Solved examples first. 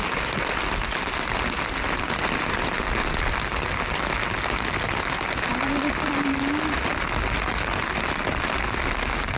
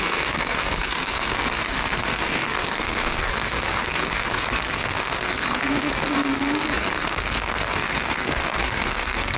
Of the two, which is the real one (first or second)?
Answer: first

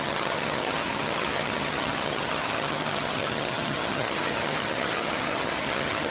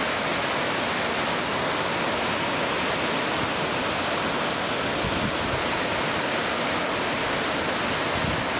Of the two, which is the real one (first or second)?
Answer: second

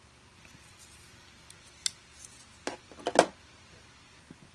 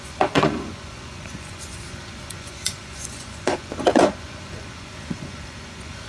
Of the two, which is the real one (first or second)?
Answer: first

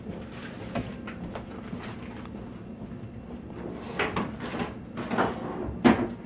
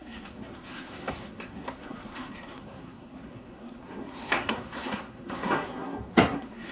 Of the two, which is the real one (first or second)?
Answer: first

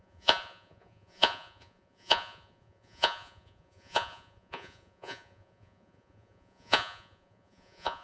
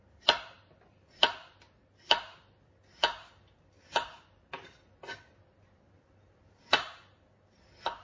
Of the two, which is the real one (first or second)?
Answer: second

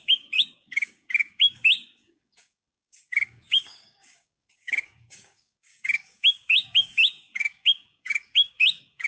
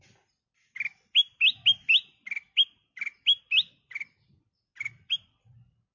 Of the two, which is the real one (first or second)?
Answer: second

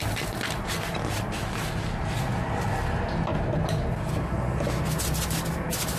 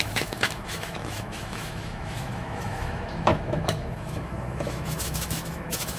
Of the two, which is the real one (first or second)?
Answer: first